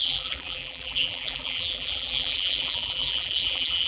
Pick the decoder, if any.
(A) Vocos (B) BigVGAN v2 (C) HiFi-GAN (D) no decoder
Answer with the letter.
B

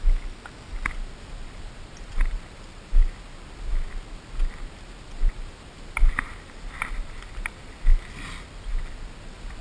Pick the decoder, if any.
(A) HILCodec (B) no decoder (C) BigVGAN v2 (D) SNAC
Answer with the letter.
B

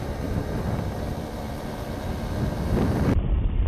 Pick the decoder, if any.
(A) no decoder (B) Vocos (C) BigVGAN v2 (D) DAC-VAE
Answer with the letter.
C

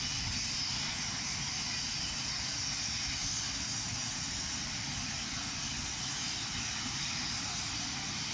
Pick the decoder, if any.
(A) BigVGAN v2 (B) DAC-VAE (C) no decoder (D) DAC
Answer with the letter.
C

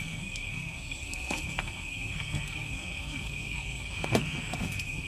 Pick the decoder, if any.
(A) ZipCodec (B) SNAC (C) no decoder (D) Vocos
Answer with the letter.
B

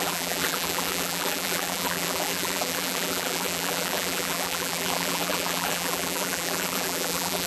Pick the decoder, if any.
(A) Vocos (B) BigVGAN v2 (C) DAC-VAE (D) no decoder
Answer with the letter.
B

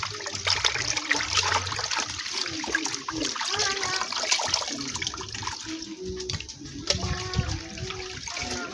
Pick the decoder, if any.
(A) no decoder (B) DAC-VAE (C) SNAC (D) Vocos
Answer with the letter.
A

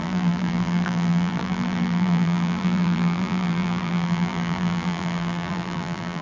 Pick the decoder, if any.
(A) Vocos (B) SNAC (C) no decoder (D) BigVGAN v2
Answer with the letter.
D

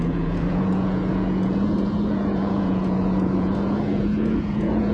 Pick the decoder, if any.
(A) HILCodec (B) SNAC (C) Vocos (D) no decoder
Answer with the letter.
C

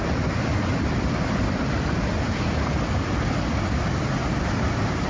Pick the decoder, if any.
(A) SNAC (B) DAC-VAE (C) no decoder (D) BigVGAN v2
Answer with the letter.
C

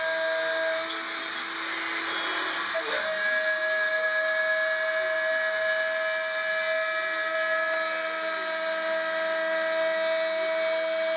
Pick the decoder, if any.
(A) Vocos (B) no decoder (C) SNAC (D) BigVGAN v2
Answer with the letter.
B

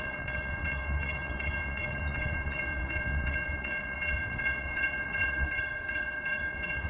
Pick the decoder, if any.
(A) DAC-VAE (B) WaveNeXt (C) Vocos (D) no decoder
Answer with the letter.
B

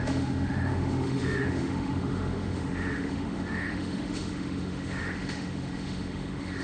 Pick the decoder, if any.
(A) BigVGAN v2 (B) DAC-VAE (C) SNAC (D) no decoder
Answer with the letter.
B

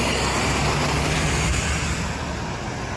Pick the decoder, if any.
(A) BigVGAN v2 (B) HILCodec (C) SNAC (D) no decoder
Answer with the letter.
D